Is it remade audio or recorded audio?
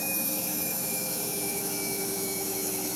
remade